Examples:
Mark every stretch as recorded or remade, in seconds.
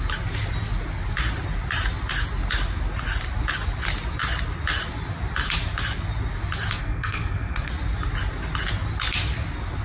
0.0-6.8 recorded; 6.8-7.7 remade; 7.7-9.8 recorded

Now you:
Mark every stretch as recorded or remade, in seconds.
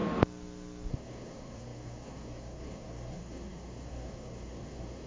0.0-0.9 recorded; 0.9-5.1 remade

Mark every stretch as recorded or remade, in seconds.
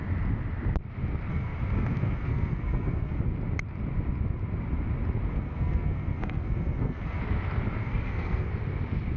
0.0-1.3 recorded; 1.3-3.2 remade; 3.2-5.3 recorded; 5.3-7.2 remade; 7.2-7.8 recorded; 7.8-8.5 remade; 8.5-9.2 recorded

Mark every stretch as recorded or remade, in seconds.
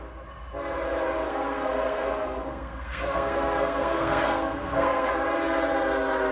0.0-1.3 recorded; 1.3-5.1 remade; 5.1-6.3 recorded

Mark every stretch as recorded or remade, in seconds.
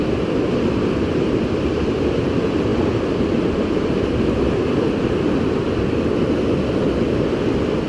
0.0-7.9 recorded